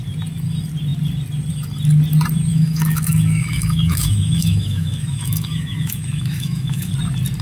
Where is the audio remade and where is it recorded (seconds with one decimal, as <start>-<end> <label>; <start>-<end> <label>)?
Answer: 0.0-2.5 recorded; 2.5-6.9 remade; 6.9-7.4 recorded